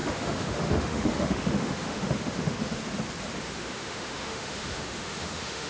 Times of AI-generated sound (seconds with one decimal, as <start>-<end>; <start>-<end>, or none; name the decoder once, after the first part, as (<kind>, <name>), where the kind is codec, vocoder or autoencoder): 0.0-2.8 (autoencoder, DAC-VAE); 3.4-5.7